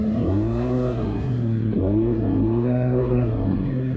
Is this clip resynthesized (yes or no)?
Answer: yes